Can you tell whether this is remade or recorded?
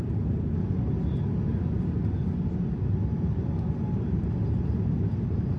recorded